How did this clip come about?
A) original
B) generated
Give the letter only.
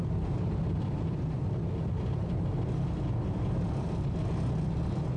A